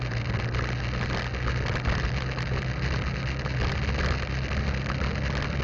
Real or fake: real